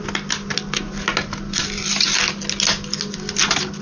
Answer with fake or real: real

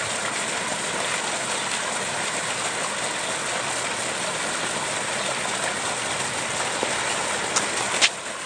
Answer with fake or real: real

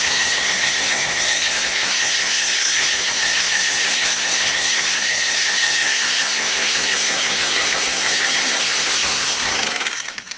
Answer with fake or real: fake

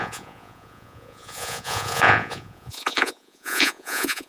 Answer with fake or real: fake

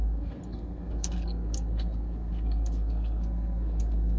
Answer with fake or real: fake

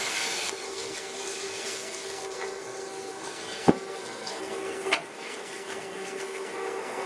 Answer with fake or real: fake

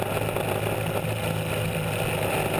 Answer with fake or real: real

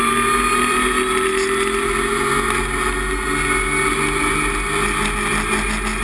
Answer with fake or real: real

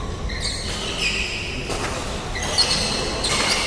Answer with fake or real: real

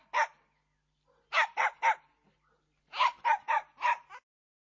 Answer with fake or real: fake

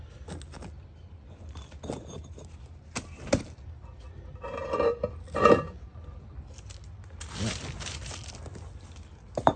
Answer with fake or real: real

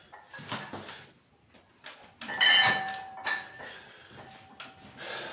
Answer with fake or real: real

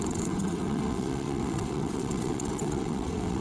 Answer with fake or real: fake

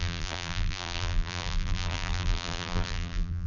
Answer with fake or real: fake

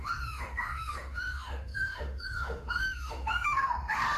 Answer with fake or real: fake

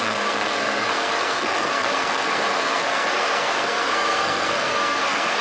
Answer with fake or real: fake